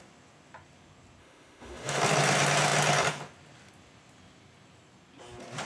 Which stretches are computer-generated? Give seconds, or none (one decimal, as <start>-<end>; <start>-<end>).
1.2-2.0